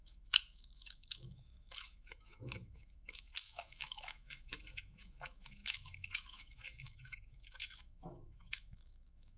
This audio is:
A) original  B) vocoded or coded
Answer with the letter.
B